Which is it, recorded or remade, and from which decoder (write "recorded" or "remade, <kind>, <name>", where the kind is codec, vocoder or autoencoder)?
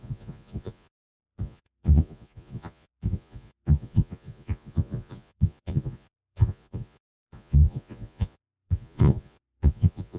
remade, vocoder, Vocos